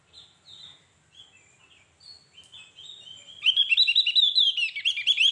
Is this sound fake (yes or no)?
no